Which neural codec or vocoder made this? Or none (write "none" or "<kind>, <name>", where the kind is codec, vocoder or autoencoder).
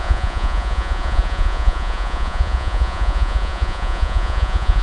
vocoder, Vocos